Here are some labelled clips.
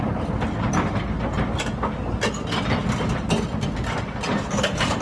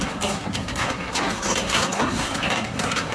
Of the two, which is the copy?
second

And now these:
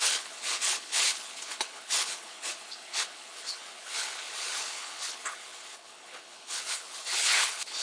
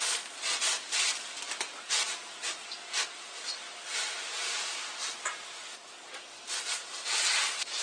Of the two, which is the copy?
first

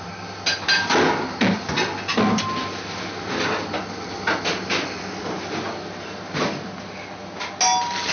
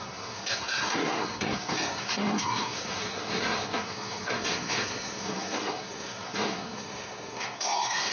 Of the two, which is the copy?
second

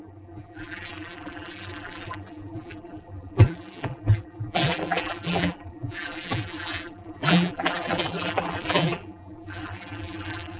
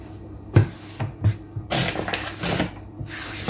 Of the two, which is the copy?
first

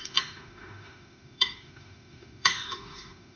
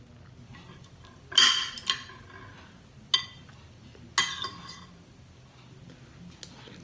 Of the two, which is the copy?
first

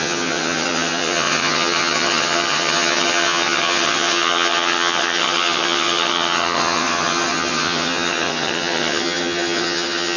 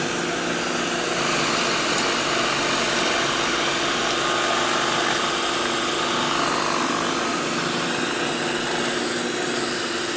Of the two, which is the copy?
first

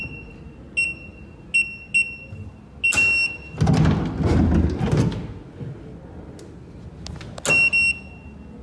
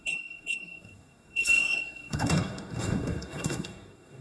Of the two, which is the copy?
second